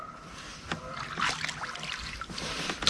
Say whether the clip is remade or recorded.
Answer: recorded